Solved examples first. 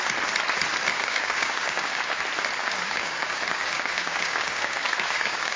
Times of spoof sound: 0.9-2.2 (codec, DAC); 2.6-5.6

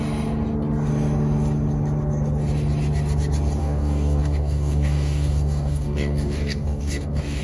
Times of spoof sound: 3.6-7.4 (codec, DAC)

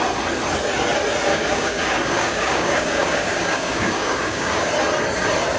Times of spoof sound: 1.3-4.7 (codec, DAC)

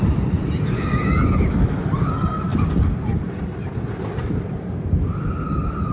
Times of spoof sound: none

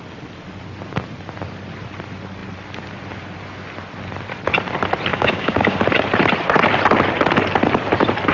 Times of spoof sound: 5.1-5.8 (codec, DAC)

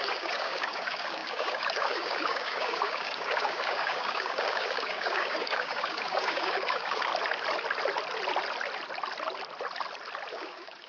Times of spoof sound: 0.0-7.1 (codec, DAC); 10.3-10.9

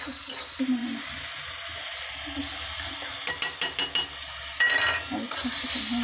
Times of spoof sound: none